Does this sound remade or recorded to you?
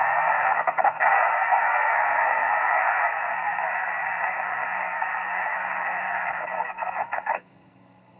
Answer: remade